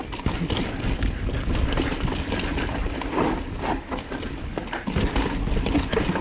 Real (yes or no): yes